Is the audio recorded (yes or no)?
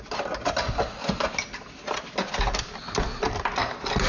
yes